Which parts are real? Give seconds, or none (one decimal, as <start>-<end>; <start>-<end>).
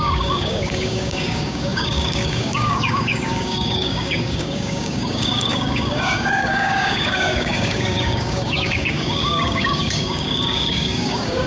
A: none